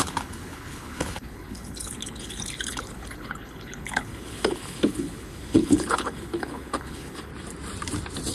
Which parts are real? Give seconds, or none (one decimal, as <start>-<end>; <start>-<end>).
7.3-8.3